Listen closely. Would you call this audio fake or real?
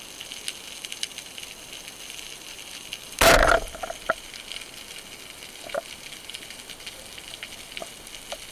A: real